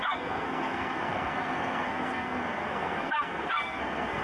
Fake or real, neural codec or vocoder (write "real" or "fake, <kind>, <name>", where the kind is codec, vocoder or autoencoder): fake, codec, SNAC